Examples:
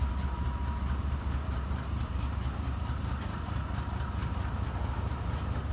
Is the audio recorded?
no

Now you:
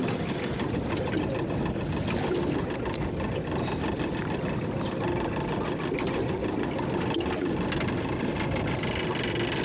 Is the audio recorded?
yes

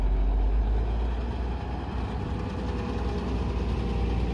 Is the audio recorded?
yes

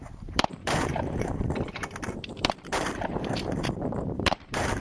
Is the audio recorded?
no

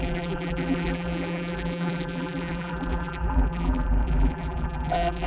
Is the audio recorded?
no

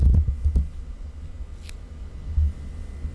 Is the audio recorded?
yes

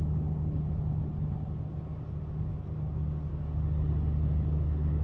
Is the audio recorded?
yes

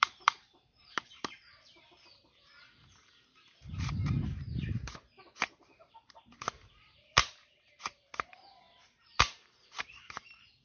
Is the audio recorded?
no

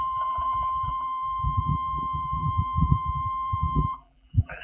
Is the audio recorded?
no